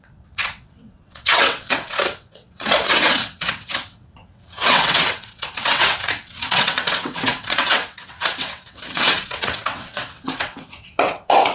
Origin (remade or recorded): remade